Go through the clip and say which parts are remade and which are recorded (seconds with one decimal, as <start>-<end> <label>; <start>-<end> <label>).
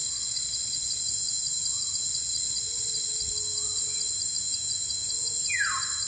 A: 0.0-1.0 remade; 1.0-2.1 recorded; 2.1-3.3 remade; 3.3-6.1 recorded